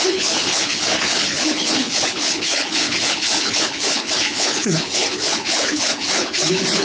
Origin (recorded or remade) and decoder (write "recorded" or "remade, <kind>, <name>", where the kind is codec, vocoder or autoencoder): remade, codec, HILCodec